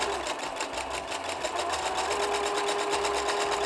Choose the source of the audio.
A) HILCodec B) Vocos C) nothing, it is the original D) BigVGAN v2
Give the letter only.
C